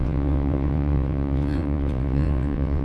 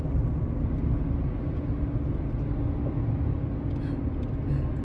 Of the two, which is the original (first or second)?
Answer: second